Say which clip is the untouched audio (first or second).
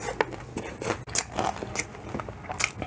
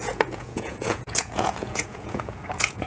first